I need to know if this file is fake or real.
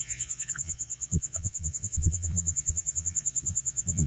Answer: fake